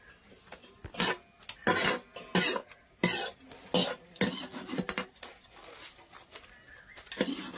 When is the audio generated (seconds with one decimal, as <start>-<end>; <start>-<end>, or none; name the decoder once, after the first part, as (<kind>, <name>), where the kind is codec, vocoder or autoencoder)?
none